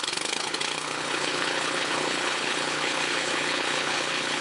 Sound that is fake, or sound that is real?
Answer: fake